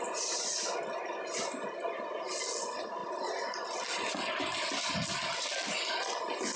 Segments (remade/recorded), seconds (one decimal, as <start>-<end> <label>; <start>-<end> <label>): 0.0-6.6 recorded